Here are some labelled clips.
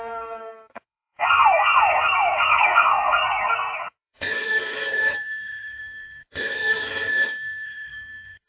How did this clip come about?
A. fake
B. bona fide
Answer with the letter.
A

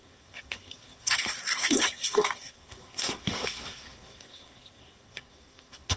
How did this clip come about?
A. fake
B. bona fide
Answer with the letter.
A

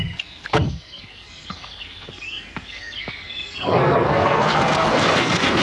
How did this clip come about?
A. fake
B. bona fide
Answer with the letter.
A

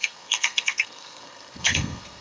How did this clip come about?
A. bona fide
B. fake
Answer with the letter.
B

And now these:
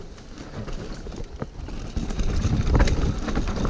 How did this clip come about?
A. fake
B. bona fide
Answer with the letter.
B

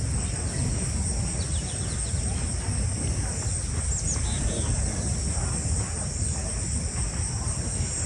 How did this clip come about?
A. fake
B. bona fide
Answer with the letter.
B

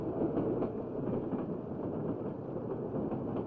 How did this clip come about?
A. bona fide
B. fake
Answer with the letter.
A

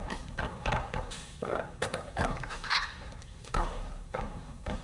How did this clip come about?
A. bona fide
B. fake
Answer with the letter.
B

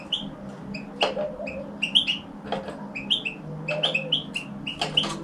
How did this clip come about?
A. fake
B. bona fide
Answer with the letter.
B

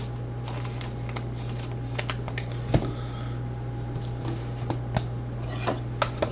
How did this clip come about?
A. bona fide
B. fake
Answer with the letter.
A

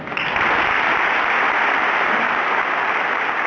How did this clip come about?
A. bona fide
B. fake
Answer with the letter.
A